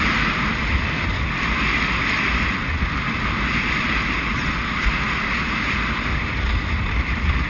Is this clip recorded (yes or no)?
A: yes